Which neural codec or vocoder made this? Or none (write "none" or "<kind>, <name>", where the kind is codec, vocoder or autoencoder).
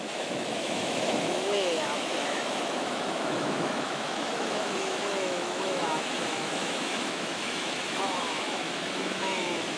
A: autoencoder, DAC-VAE